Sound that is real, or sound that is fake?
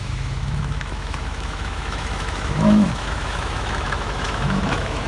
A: fake